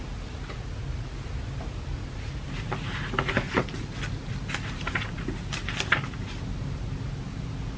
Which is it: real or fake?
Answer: real